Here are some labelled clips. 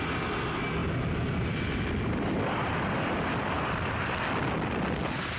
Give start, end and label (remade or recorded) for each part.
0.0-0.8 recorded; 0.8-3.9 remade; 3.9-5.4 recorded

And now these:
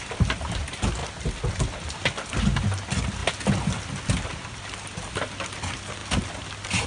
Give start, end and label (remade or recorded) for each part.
0.0-6.9 recorded

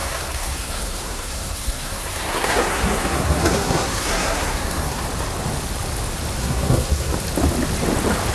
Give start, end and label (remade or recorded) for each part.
0.0-5.0 remade; 5.0-6.4 recorded; 6.4-7.1 remade; 7.1-8.3 recorded

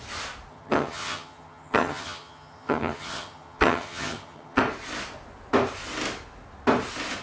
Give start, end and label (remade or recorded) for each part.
0.0-0.5 recorded; 0.5-4.6 remade; 4.6-7.2 recorded

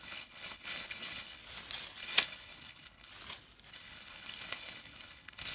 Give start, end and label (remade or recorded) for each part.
0.0-1.4 remade; 1.4-2.0 recorded; 2.0-3.1 remade; 3.1-3.7 recorded; 3.7-5.5 remade

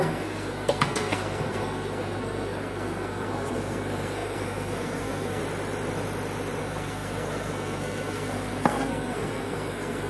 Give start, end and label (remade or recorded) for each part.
0.0-5.4 remade; 5.4-6.6 recorded; 6.6-10.1 remade

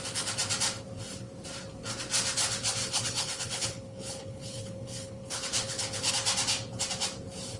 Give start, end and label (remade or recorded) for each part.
0.0-2.8 recorded; 2.8-6.1 remade; 6.1-7.6 recorded